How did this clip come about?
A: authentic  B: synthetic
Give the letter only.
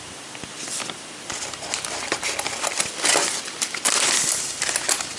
A